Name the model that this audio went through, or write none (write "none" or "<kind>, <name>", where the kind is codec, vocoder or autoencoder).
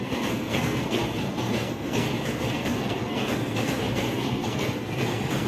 codec, SNAC